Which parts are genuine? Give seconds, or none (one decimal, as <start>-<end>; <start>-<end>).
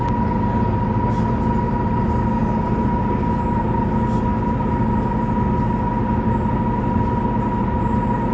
0.0-8.3